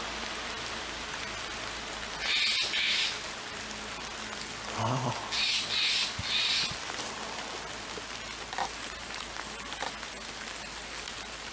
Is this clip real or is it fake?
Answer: real